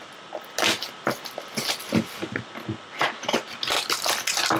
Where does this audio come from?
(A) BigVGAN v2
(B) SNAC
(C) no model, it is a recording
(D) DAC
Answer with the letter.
C